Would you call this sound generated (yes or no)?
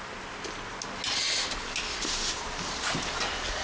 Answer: no